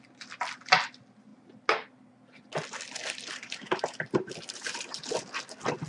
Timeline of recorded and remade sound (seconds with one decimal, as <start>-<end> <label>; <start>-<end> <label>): 0.0-3.0 recorded; 3.0-5.0 remade; 5.0-5.9 recorded